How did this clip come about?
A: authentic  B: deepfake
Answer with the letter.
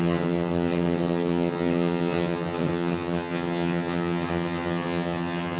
B